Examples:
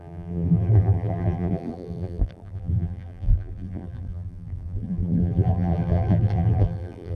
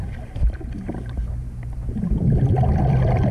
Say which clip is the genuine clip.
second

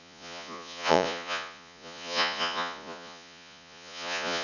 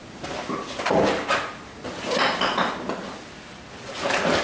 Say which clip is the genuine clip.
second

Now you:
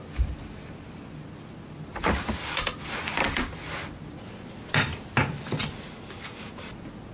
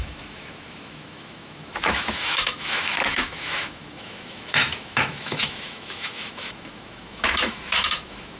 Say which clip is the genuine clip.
first